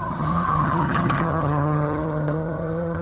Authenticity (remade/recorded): remade